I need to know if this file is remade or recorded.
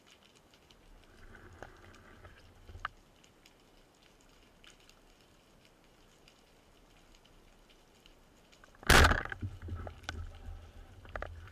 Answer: recorded